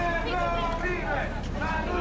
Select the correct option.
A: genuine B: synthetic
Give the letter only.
A